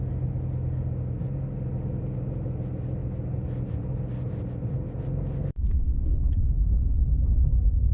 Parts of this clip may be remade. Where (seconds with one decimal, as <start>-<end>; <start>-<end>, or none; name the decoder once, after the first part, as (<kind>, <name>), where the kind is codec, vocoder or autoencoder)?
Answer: none